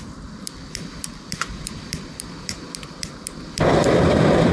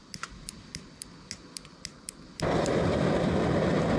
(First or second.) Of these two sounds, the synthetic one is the first